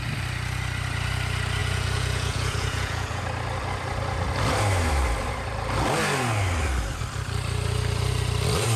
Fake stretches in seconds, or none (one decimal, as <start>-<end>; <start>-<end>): 1.6-3.2